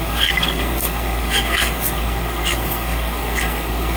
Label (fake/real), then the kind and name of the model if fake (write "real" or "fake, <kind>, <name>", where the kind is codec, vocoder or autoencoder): fake, codec, SNAC